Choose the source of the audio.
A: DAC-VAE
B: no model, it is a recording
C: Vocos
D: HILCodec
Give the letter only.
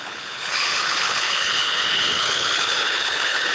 D